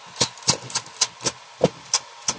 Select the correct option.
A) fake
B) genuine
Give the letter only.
B